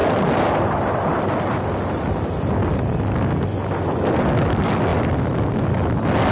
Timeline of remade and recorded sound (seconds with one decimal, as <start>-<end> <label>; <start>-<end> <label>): 0.0-6.3 recorded